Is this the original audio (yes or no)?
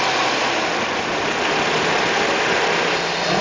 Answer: yes